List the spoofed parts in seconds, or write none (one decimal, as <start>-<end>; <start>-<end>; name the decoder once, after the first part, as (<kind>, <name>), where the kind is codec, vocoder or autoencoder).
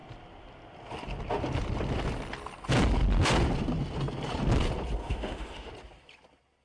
5.0-5.7 (autoencoder, DAC-VAE)